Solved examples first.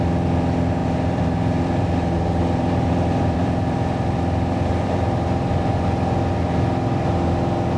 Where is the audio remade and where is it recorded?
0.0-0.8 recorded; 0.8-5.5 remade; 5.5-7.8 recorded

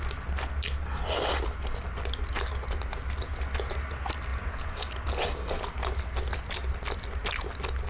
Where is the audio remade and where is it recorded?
0.0-4.3 recorded; 4.3-4.8 remade; 4.8-7.9 recorded

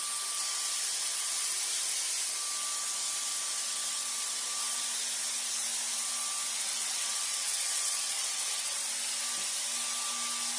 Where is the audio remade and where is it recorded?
0.0-6.6 recorded; 6.6-8.8 remade; 8.8-10.6 recorded